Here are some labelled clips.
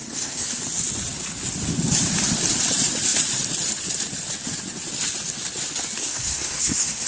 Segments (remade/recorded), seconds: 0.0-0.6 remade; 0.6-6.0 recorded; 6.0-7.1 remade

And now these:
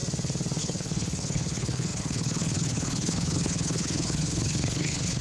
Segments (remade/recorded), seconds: 0.0-0.6 recorded; 0.6-5.2 remade

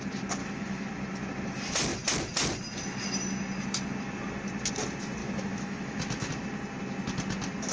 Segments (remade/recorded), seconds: 0.0-0.4 recorded; 0.4-0.9 remade; 0.9-5.2 recorded; 5.2-6.3 remade; 6.3-7.7 recorded

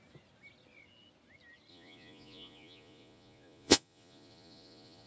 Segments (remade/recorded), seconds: 0.0-1.7 recorded; 1.7-5.1 remade

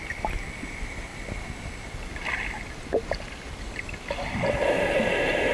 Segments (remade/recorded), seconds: 0.0-5.5 recorded

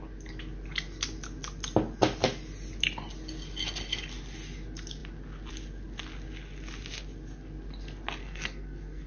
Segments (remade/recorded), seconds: 0.0-8.2 recorded; 8.2-9.1 remade

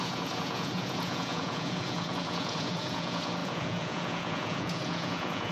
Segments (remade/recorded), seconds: 0.0-5.5 remade

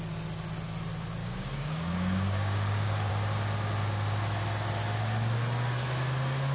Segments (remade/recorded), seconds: 0.0-1.2 recorded; 1.2-3.1 remade; 3.1-6.5 recorded